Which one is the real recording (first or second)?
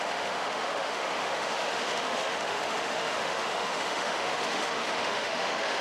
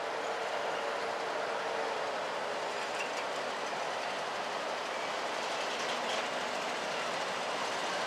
second